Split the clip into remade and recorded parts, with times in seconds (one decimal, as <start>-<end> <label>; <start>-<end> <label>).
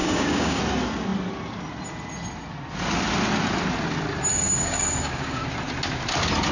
0.0-0.6 remade; 0.6-4.3 recorded; 4.3-5.4 remade; 5.4-6.5 recorded